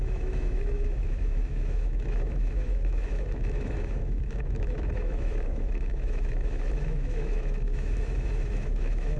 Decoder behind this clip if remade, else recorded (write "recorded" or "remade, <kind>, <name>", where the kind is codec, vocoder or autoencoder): remade, autoencoder, DAC-VAE